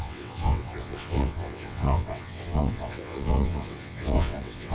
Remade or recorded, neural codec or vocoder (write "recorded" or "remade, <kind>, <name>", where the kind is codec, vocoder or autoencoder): remade, vocoder, WaveNeXt